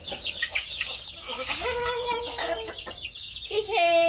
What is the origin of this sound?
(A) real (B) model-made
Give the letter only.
B